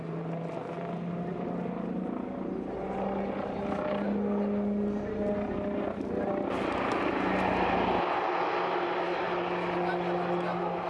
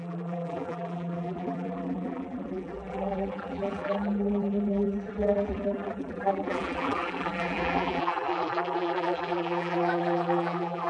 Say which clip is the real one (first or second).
first